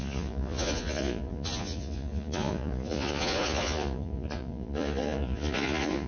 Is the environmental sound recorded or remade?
remade